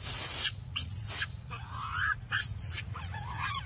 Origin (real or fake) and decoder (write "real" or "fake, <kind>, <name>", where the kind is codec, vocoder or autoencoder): fake, vocoder, Vocos